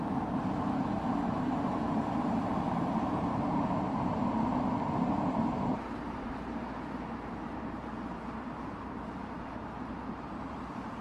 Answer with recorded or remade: remade